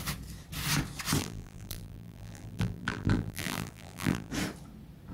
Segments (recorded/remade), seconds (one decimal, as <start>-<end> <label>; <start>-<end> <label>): 0.0-1.2 recorded; 1.2-4.3 remade; 4.3-5.1 recorded